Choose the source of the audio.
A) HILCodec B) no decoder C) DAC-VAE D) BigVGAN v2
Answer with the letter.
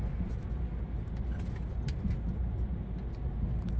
B